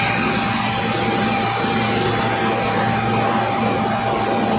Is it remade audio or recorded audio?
recorded